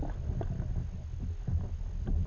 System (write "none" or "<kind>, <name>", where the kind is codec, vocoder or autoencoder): none